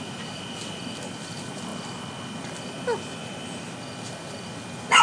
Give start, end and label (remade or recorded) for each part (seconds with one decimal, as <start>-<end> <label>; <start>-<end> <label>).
0.0-3.2 recorded; 3.2-3.7 remade; 3.7-5.0 recorded